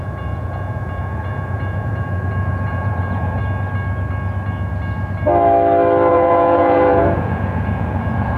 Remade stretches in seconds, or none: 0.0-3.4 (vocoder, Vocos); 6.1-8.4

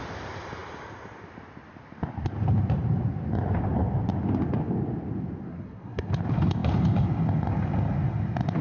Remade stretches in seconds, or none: 5.5-6.1 (codec, SNAC)

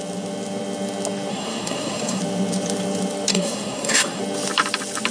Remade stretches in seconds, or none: 1.3-2.2 (codec, SNAC); 3.3-4.2

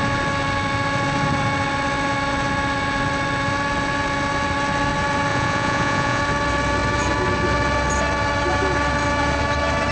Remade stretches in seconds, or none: 5.3-6.2 (vocoder, Vocos)

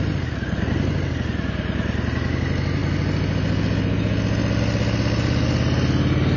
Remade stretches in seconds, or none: none

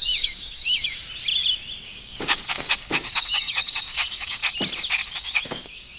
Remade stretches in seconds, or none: 0.0-1.0 (codec, DAC); 1.8-4.4; 5.0-6.0

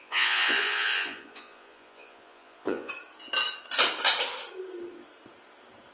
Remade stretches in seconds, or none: 0.0-2.9 (vocoder, Vocos)